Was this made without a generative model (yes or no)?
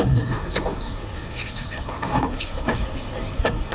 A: no